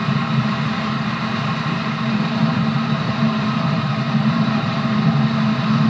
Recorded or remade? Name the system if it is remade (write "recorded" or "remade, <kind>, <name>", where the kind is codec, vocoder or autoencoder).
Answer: remade, vocoder, BigVGAN v2